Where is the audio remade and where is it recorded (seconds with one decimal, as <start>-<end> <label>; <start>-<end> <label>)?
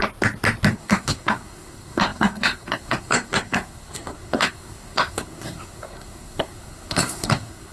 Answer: 0.0-0.7 recorded; 0.7-7.7 remade